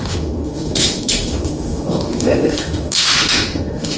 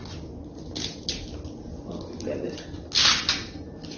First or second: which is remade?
first